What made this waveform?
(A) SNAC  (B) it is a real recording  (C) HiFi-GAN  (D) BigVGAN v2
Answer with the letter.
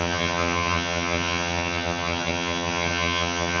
C